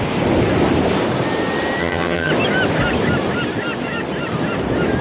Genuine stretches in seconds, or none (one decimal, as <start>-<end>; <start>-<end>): 0.0-1.8; 2.3-5.0